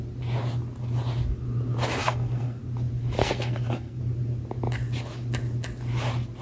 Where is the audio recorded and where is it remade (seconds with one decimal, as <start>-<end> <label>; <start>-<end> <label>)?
0.0-2.0 recorded; 2.0-2.6 remade; 2.6-3.2 recorded; 3.2-4.0 remade; 4.0-6.4 recorded